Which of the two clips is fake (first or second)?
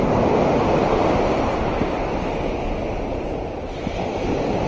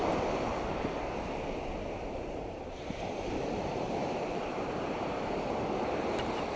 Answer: second